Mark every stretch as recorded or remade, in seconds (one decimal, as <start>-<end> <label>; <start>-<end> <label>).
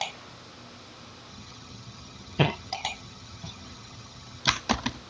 0.0-1.3 recorded; 1.3-4.4 remade; 4.4-5.1 recorded